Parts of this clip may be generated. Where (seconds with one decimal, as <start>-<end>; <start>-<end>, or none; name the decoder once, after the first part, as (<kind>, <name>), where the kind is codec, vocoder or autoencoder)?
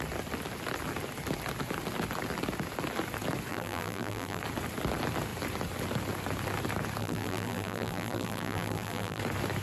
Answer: 3.5-4.4 (vocoder, BigVGAN v2); 7.0-9.2